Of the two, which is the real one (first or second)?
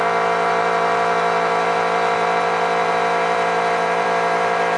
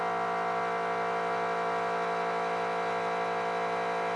second